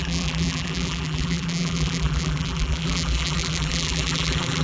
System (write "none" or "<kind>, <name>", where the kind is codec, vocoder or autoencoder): vocoder, BigVGAN v2